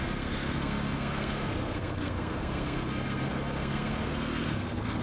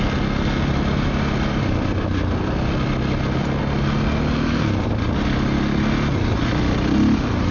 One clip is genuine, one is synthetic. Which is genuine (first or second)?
second